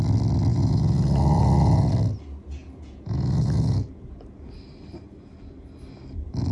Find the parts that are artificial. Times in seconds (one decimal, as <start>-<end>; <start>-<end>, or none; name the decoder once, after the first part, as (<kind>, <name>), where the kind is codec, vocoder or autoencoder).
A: 0.5-1.9 (vocoder, Vocos); 2.6-4.2